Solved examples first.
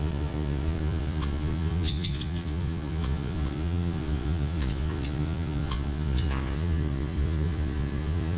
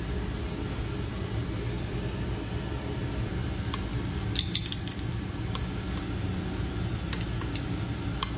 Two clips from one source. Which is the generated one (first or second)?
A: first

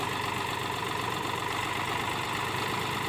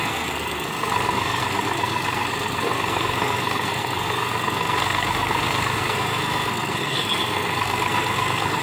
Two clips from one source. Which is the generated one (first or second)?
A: second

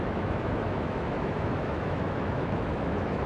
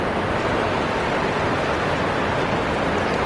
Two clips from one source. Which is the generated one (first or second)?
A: first